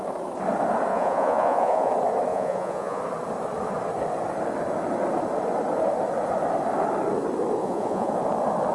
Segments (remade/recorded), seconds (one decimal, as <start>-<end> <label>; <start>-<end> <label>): 0.0-0.9 recorded; 0.9-1.9 remade; 1.9-2.3 recorded; 2.3-3.0 remade; 3.0-7.6 recorded; 7.6-8.1 remade; 8.1-8.7 recorded